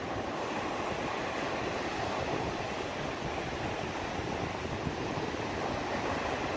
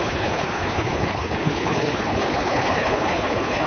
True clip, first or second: first